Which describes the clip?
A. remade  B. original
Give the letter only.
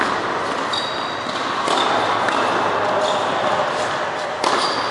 B